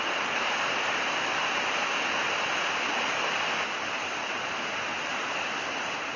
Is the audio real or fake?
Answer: real